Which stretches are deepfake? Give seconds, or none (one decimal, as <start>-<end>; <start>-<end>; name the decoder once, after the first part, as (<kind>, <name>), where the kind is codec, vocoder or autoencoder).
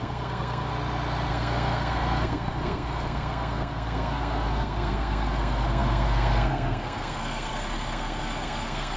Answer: 0.0-0.7 (codec, SNAC); 1.3-9.0